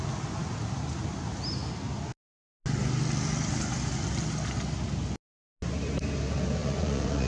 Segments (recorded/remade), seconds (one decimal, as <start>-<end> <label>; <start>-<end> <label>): 0.0-6.6 recorded; 6.6-7.3 remade